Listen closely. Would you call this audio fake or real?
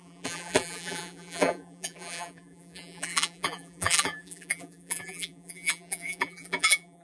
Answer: fake